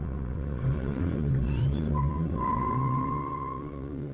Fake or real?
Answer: fake